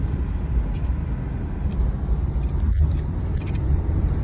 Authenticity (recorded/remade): recorded